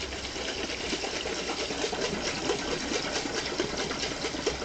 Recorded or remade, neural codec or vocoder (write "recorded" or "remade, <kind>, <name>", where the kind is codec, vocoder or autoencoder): recorded